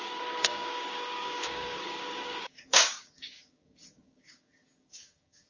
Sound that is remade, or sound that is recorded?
remade